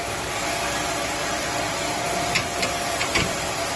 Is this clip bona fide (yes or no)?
yes